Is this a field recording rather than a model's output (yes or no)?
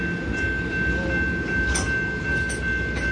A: yes